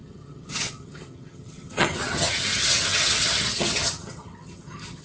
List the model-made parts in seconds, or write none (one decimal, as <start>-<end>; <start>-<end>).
0.0-5.0